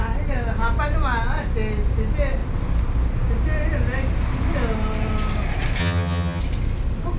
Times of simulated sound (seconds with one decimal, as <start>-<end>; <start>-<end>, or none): 5.8-6.4